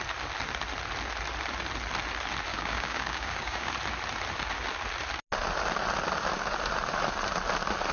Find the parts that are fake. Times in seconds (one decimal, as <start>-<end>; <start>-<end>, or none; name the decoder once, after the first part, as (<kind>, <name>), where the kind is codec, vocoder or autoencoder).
2.5-3.7 (codec, DAC)